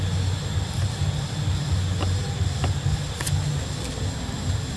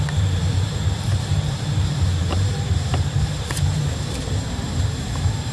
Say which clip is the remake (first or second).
second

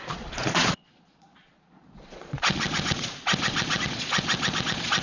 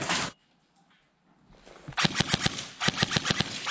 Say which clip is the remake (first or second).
first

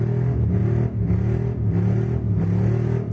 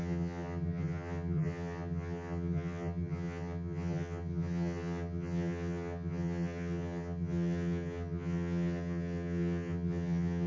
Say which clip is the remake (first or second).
second